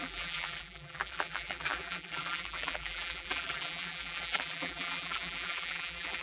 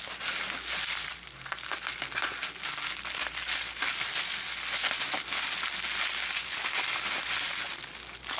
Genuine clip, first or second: second